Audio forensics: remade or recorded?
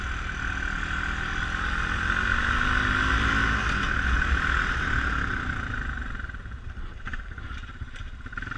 recorded